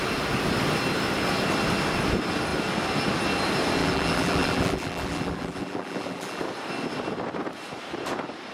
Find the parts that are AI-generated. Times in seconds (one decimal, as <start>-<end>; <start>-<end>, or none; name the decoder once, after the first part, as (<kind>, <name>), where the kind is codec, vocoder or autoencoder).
3.8-6.4 (vocoder, BigVGAN v2)